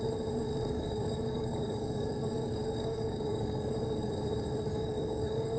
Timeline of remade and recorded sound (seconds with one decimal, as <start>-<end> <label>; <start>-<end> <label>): 0.0-0.7 recorded; 0.7-4.1 remade; 4.1-4.7 recorded; 4.7-5.6 remade